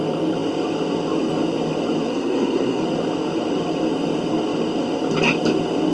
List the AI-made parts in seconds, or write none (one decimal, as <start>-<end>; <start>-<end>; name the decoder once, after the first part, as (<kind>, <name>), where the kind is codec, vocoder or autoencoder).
2.1-2.8 (codec, SNAC)